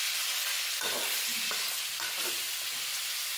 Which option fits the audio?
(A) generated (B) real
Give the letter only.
B